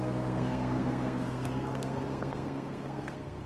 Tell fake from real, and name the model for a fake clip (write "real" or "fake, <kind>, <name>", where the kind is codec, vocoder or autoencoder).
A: fake, codec, SNAC